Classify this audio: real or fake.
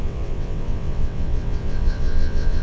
fake